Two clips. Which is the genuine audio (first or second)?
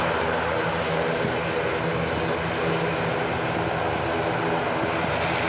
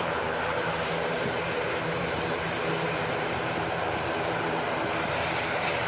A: first